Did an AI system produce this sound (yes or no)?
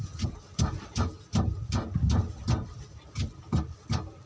no